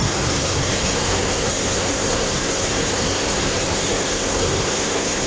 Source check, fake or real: fake